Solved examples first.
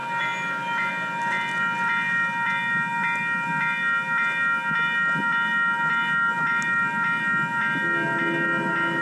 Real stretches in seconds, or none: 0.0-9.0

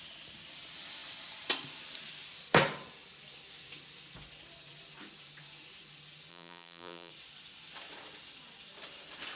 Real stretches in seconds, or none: 0.0-6.3; 7.1-9.4

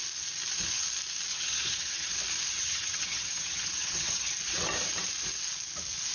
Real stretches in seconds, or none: 0.0-1.3; 2.1-2.5; 4.3-6.1